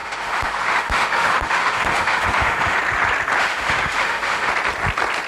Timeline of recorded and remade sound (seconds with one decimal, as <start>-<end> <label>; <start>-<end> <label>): 0.0-2.8 remade; 2.8-3.4 recorded; 3.4-4.5 remade; 4.5-5.3 recorded